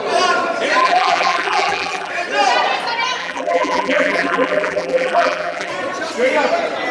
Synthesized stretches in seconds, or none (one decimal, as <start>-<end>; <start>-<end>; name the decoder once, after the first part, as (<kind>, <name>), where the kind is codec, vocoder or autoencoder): 0.8-2.1 (vocoder, BigVGAN v2); 3.2-5.7

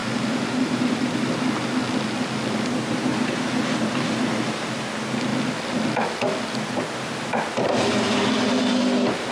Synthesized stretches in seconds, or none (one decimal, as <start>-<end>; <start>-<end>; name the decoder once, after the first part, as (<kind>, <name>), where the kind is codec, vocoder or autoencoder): 0.0-1.0 (vocoder, BigVGAN v2)

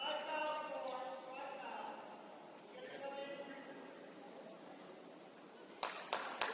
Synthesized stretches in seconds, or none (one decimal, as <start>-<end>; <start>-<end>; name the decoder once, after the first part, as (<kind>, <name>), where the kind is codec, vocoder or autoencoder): none

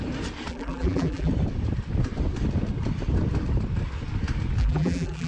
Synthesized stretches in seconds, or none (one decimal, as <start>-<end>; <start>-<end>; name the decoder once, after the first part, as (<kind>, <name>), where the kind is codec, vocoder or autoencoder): 0.5-1.3 (vocoder, BigVGAN v2); 4.6-5.3